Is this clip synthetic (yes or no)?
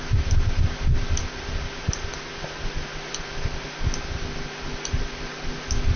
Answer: no